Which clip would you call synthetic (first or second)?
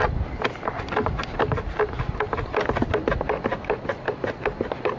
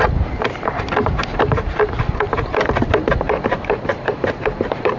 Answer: second